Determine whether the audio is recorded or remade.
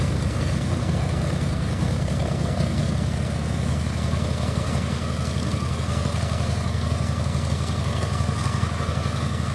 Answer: remade